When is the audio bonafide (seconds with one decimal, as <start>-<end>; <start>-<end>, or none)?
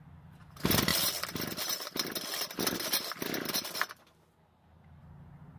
0.0-5.6